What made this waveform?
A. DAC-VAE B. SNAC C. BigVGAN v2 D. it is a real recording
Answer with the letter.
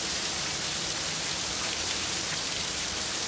C